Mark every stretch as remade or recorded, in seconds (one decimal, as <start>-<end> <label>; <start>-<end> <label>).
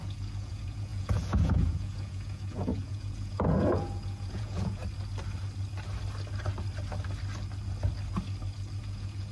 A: 0.0-4.8 remade; 4.8-8.8 recorded; 8.8-9.3 remade